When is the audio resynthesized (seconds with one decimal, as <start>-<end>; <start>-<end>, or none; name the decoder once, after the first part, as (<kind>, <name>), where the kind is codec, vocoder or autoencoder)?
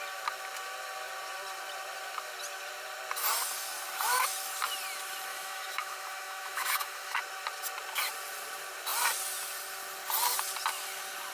5.3-7.2 (autoencoder, DAC-VAE)